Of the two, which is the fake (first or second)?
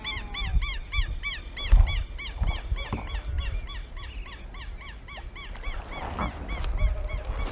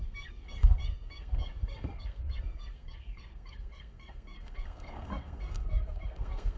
second